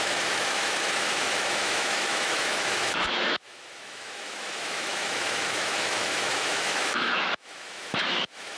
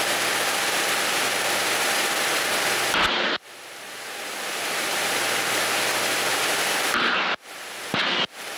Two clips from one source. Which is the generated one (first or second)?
first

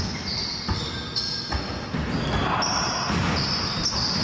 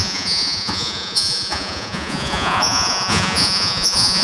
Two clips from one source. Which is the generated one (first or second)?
second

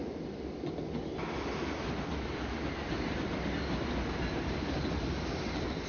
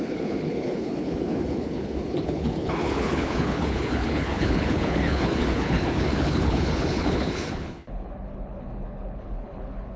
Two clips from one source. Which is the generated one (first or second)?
second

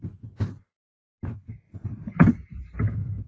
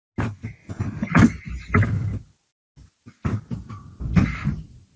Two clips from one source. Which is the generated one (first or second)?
first